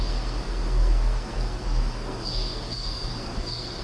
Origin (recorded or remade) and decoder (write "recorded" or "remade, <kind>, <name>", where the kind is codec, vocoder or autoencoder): remade, codec, SNAC